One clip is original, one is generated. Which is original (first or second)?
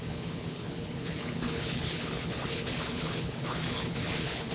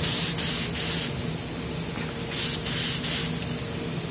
second